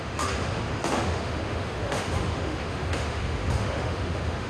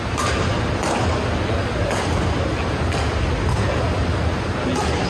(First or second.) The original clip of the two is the second